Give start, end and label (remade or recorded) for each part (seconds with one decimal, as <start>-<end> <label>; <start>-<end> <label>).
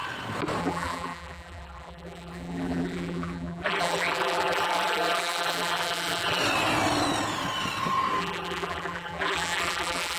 0.0-0.6 recorded; 0.6-6.4 remade; 6.4-8.2 recorded; 8.2-10.2 remade